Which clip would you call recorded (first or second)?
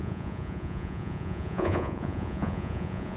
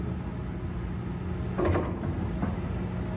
second